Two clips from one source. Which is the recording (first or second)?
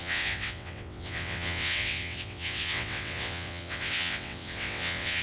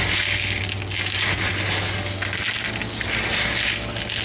second